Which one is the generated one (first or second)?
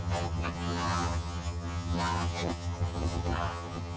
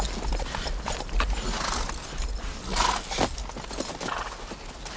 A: first